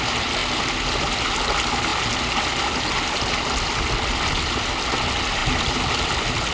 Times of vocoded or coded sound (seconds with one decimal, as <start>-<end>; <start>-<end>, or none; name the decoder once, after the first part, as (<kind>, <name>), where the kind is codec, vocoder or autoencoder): none